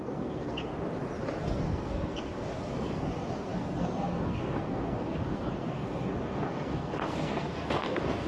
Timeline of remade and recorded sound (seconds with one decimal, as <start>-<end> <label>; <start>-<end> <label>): 0.0-0.7 remade; 0.7-1.4 recorded; 1.4-8.3 remade